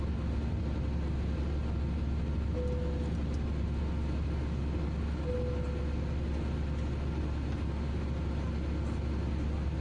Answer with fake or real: real